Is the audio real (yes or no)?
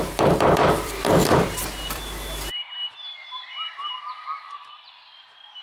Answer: no